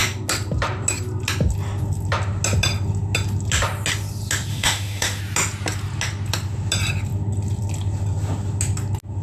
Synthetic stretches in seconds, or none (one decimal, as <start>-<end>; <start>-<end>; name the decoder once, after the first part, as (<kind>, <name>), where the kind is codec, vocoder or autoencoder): 4.5-5.2 (autoencoder, DAC-VAE)